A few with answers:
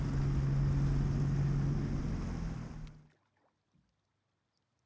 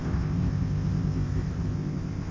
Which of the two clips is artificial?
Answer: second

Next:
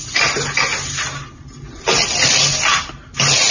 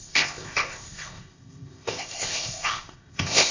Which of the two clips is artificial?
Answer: second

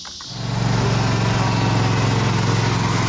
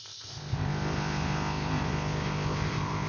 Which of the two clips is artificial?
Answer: second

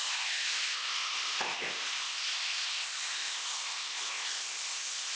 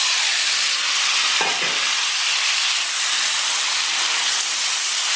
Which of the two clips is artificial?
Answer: first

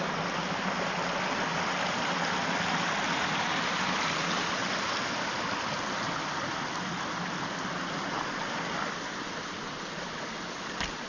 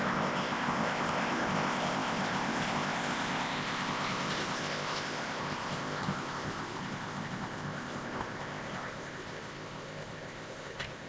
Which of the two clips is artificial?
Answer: second